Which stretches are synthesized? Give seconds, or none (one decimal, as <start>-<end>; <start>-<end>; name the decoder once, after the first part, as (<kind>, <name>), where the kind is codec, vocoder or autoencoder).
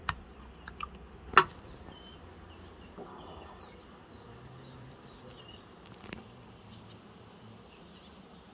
3.1-3.6 (codec, DAC)